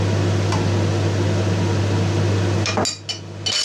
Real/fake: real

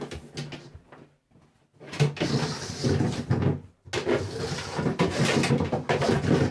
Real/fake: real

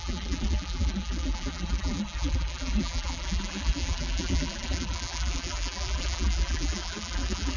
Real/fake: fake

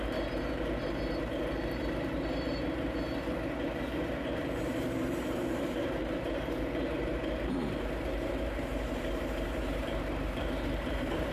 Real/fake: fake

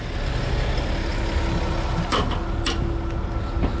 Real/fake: real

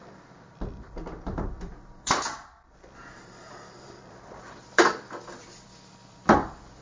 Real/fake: fake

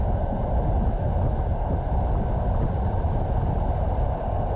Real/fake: real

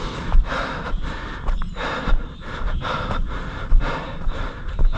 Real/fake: fake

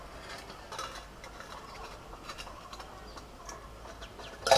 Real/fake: real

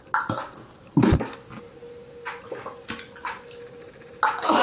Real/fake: real